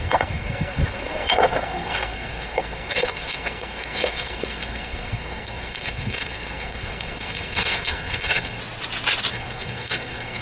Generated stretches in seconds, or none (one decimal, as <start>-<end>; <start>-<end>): 0.0-8.6; 9.3-10.4